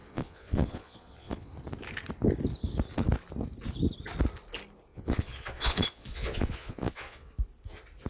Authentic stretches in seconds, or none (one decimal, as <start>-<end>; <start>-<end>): 1.5-4.9; 7.3-8.1